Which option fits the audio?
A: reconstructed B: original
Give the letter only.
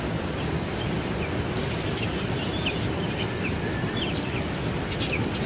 B